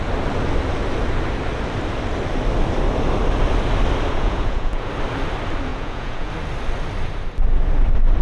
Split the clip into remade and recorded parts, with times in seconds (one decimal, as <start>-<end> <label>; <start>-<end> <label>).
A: 0.0-4.1 recorded; 4.1-4.9 remade; 4.9-5.7 recorded; 5.7-6.3 remade; 6.3-8.2 recorded